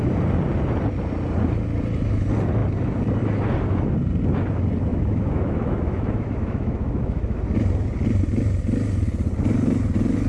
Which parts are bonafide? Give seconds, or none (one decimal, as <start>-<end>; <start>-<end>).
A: 0.0-4.9; 7.4-10.3